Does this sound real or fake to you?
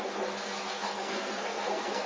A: fake